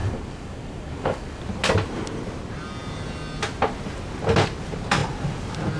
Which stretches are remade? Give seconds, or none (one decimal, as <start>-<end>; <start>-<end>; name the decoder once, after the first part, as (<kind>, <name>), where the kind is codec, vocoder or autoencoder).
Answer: 0.0-1.4 (codec, DAC)